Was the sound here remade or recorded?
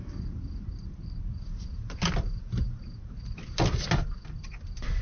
recorded